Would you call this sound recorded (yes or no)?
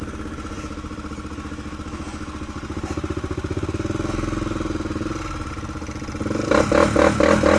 yes